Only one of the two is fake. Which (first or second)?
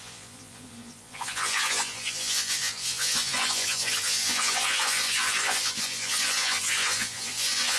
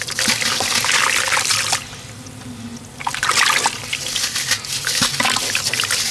first